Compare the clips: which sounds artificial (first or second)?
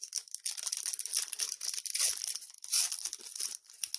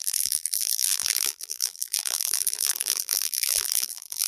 second